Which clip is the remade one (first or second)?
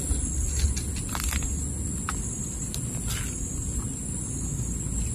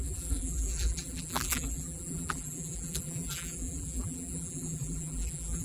second